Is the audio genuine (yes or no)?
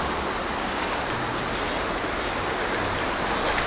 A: yes